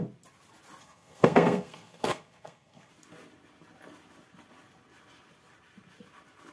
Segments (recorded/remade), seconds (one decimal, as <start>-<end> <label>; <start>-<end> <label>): 0.0-0.8 recorded; 0.8-2.9 remade; 2.9-6.5 recorded